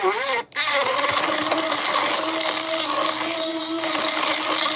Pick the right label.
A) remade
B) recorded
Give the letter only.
B